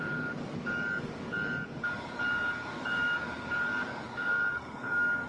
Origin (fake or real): fake